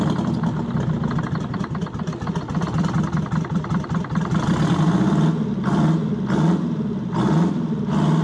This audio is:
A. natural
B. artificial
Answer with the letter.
A